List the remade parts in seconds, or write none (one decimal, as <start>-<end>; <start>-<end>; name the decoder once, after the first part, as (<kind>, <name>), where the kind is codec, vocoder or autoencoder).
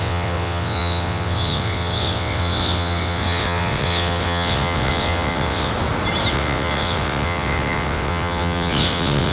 0.0-5.7 (vocoder, WaveNeXt); 6.3-9.3